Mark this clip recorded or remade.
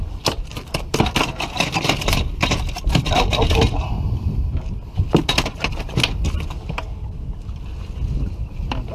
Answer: recorded